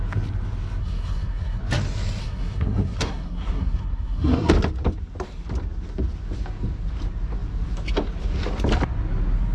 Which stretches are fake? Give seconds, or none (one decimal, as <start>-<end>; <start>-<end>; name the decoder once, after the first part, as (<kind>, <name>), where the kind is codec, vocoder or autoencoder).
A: 0.8-1.6 (codec, SNAC); 2.2-4.5